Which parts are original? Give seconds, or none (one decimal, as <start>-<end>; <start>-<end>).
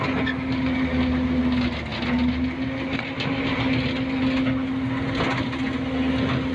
0.0-6.5